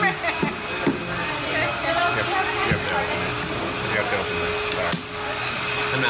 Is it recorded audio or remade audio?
recorded